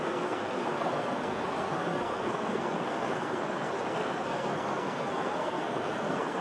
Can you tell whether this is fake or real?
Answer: fake